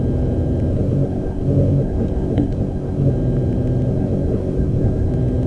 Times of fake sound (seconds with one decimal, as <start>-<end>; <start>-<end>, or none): 0.7-3.1; 3.9-5.1